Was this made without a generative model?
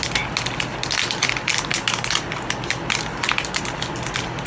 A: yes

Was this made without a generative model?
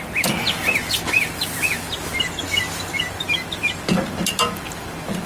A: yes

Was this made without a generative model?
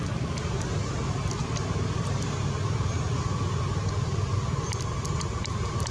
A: yes